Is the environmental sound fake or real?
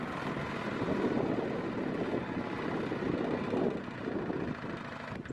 real